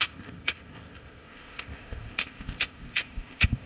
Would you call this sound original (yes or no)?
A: no